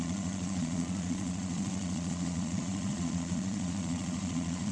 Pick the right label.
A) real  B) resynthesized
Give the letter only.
B